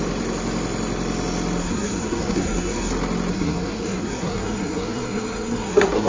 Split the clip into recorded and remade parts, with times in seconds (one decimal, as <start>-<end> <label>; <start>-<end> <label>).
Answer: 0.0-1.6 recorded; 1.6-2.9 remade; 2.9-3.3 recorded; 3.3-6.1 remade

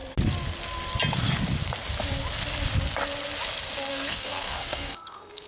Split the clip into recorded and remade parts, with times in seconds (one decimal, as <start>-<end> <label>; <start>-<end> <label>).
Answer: 0.0-3.9 recorded; 3.9-5.5 remade

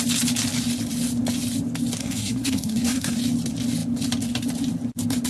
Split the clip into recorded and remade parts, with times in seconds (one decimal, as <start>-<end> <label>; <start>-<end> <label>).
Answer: 0.0-2.0 recorded; 2.0-3.2 remade; 3.2-5.3 recorded